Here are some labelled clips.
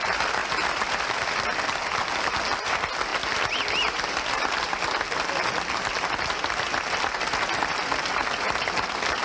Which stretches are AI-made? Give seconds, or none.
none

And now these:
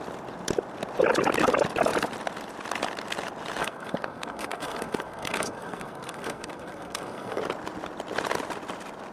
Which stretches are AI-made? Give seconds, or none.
3.6-7.4 (codec, SNAC)